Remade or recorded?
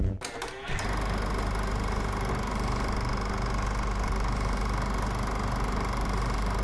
recorded